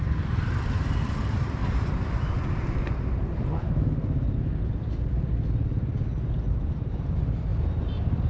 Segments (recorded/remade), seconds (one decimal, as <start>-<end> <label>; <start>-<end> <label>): 0.0-1.6 remade; 1.6-6.5 recorded; 6.5-7.5 remade; 7.5-8.3 recorded